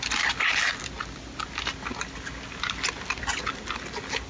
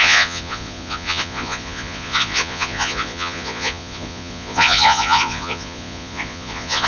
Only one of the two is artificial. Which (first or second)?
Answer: second